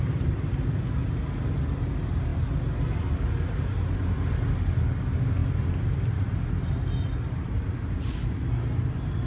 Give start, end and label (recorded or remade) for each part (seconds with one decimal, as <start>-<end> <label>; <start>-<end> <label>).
0.0-9.3 recorded